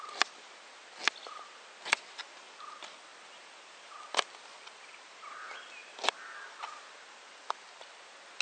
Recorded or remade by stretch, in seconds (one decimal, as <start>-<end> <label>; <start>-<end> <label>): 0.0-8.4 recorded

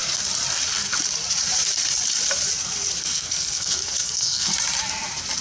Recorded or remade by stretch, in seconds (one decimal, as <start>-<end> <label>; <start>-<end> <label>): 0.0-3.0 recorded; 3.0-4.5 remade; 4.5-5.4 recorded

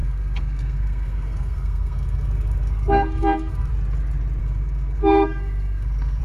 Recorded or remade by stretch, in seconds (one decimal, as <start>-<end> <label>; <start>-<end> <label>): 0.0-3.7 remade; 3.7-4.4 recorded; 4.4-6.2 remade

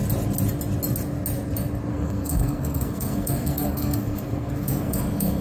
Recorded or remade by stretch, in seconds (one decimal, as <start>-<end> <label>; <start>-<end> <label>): 0.0-1.9 recorded; 1.9-5.4 remade